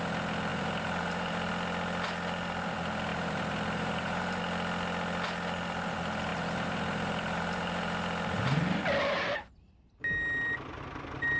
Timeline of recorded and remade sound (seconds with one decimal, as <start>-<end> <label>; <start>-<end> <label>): 0.0-0.5 recorded; 0.5-1.5 remade; 1.5-3.1 recorded; 3.1-4.4 remade; 4.4-6.3 recorded; 6.3-8.8 remade; 8.8-11.4 recorded